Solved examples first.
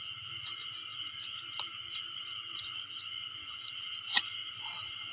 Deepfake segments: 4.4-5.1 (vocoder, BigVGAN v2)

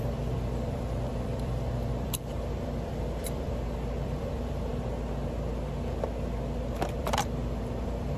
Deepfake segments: 0.0-4.7 (vocoder, BigVGAN v2); 7.0-8.2

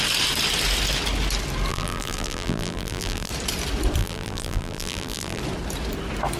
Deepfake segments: 1.7-3.3 (vocoder, BigVGAN v2); 4.0-5.4

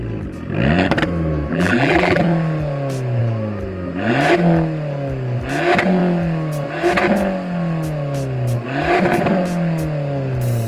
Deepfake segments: 1.5-2.2 (vocoder, BigVGAN v2)

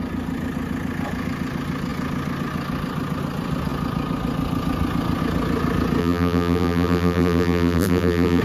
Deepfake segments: 6.0-8.4 (vocoder, BigVGAN v2)